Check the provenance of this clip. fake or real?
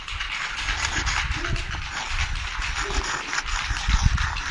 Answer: real